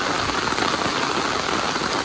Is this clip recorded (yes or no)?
yes